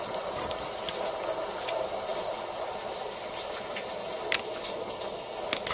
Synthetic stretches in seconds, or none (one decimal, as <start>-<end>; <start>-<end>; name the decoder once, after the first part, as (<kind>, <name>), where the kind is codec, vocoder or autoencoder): none